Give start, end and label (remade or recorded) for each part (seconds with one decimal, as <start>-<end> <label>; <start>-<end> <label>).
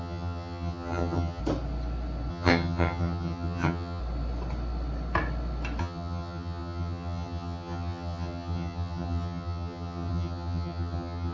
0.0-1.4 remade; 1.4-2.3 recorded; 2.3-4.0 remade; 4.0-5.8 recorded; 5.8-11.3 remade